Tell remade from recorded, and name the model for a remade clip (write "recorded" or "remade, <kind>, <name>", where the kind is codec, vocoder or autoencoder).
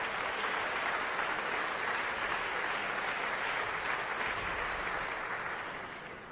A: recorded